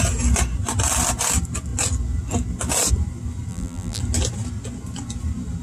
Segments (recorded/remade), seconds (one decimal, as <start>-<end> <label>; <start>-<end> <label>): 0.0-3.5 recorded; 3.5-4.0 remade; 4.0-5.6 recorded